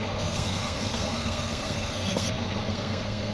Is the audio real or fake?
fake